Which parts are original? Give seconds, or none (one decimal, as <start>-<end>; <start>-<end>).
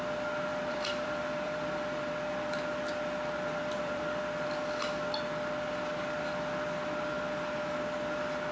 0.0-0.5; 2.1-3.6; 4.2-8.5